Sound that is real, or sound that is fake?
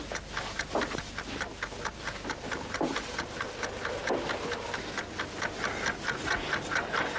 real